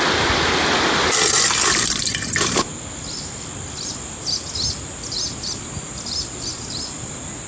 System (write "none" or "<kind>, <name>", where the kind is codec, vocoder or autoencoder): none